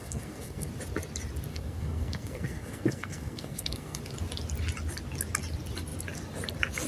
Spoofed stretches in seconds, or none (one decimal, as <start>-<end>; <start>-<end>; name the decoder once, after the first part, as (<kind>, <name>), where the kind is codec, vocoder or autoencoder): 0.0-0.7 (codec, SNAC); 1.5-4.0